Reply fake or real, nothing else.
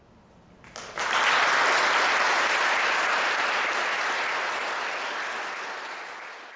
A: real